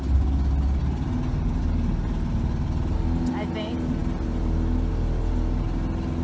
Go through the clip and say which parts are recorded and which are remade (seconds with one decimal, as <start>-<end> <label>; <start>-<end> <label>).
0.0-6.2 recorded